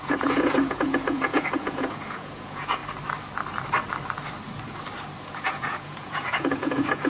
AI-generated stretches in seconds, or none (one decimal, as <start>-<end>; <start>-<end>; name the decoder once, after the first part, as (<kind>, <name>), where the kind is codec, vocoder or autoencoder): 0.0-2.8 (vocoder, Vocos); 5.2-7.1